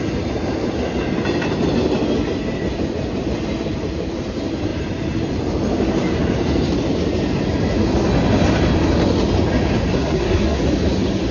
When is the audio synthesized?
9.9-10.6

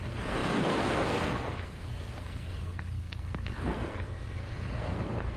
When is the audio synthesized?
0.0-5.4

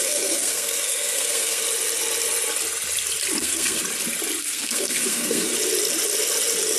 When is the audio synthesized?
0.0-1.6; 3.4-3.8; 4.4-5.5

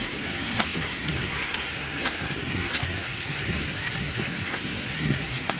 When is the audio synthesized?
0.0-5.6